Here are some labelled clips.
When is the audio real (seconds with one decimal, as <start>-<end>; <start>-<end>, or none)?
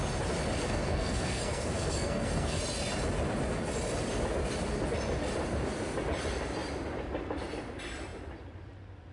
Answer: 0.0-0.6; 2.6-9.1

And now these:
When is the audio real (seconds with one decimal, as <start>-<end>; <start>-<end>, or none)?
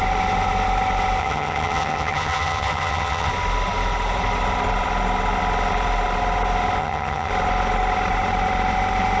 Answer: 0.0-1.2; 3.3-6.8; 7.3-9.2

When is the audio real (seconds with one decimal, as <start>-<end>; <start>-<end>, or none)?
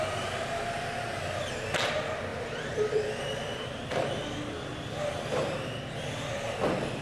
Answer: 0.0-2.3; 5.8-7.0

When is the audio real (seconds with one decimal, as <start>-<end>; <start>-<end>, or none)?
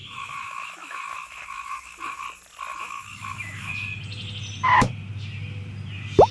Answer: 2.2-2.7; 3.7-6.3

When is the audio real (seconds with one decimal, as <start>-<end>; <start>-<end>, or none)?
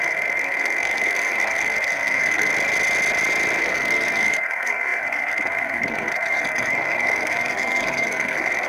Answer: 2.5-3.6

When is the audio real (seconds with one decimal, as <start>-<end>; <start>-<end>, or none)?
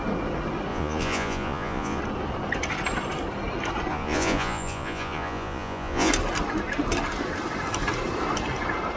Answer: 0.0-0.7; 2.0-3.9; 6.1-9.0